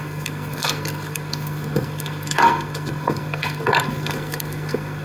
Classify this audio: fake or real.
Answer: fake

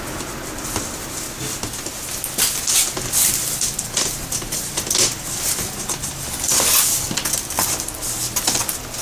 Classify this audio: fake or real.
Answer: real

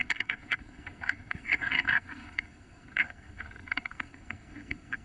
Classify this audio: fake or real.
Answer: fake